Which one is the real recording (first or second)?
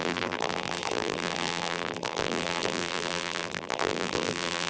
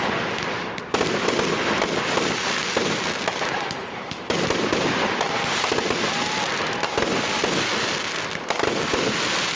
second